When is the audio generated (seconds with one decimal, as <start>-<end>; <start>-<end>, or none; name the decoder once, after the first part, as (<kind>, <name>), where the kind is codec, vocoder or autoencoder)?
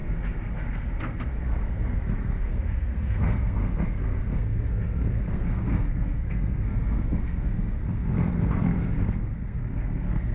0.0-10.3 (codec, SNAC)